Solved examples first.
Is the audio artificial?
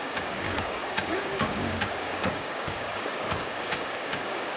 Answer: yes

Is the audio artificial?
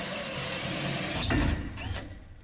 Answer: no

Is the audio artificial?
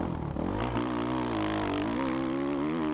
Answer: no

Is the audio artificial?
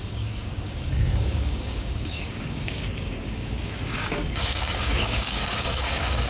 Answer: yes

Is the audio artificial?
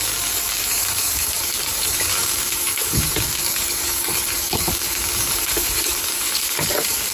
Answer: yes